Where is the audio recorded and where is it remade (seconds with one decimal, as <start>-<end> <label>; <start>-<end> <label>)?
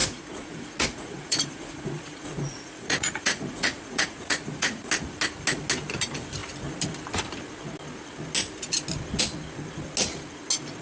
0.0-4.9 remade; 4.9-10.8 recorded